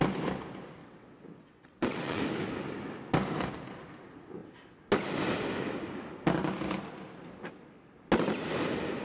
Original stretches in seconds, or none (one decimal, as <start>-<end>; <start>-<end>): 0.0-0.8; 2.2-9.0